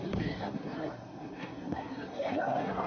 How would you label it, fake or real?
fake